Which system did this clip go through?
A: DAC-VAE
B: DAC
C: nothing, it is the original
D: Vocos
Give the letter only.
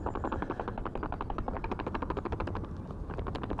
C